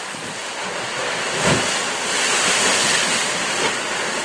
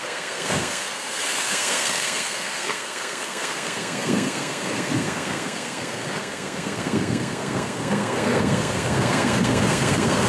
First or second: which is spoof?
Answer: second